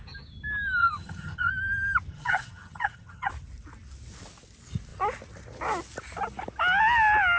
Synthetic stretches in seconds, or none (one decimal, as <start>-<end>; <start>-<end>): 0.8-1.5; 2.1-3.3